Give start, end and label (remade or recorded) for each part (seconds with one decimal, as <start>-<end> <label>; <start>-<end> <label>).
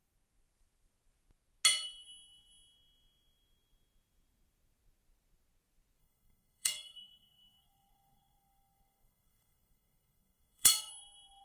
0.0-6.0 recorded; 6.0-10.9 remade; 10.9-11.4 recorded